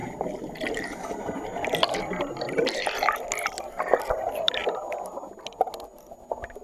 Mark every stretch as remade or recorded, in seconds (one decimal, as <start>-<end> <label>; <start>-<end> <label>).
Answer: 0.0-4.0 recorded; 4.0-4.6 remade; 4.6-6.6 recorded

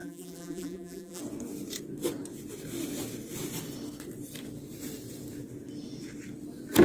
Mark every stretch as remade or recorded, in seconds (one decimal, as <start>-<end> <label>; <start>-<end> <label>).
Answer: 0.0-1.2 remade; 1.2-6.8 recorded

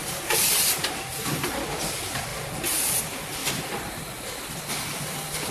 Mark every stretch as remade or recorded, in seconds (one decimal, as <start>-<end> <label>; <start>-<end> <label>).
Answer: 0.0-1.5 remade; 1.5-3.4 recorded; 3.4-4.0 remade; 4.0-5.5 recorded

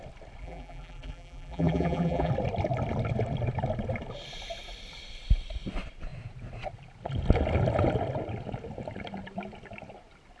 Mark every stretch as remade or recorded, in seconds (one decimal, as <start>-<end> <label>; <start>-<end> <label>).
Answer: 0.0-0.4 recorded; 0.4-2.3 remade; 2.3-10.4 recorded

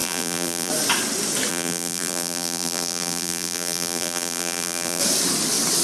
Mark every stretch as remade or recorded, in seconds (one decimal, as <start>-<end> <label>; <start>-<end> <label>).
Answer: 0.0-0.7 remade; 0.7-1.5 recorded; 1.5-5.0 remade; 5.0-5.8 recorded

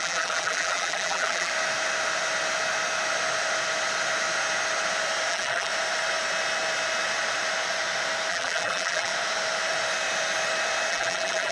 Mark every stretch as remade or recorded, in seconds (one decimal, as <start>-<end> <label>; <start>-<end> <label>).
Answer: 0.0-1.5 remade; 1.5-5.3 recorded; 5.3-5.7 remade; 5.7-8.3 recorded; 8.3-9.1 remade; 9.1-10.9 recorded; 10.9-11.5 remade